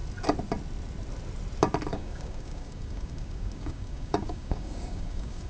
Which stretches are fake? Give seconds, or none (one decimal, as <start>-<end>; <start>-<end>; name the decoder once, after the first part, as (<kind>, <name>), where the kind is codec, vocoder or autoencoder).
1.9-5.5 (codec, DAC)